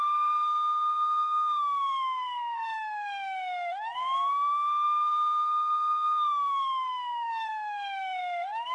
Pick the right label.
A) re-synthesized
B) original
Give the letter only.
A